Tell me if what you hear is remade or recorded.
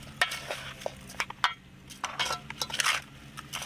recorded